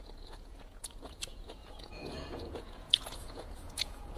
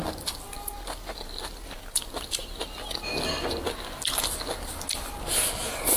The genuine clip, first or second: second